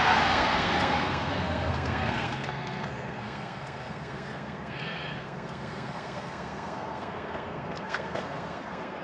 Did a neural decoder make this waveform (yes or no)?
yes